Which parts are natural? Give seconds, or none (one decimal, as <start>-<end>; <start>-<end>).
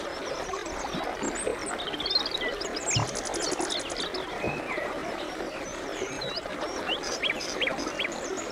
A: 0.6-4.3